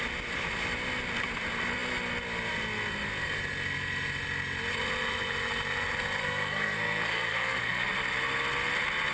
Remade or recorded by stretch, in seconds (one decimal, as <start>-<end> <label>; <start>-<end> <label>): 0.0-6.2 recorded; 6.2-7.9 remade; 7.9-9.1 recorded